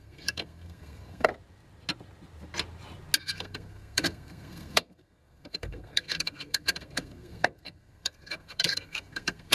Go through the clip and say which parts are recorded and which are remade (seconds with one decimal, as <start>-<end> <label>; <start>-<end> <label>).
0.0-1.3 remade; 1.3-3.2 recorded; 3.2-9.5 remade